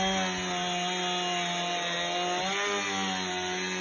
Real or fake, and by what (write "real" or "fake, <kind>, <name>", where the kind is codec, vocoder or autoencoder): real